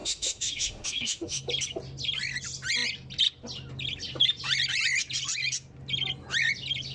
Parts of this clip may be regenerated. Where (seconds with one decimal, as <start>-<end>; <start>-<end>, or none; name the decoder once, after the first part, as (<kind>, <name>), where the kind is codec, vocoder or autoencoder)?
0.0-1.4 (autoencoder, DAC-VAE)